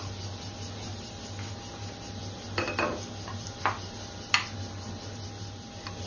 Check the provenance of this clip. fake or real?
real